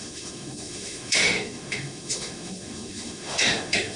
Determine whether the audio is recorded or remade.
remade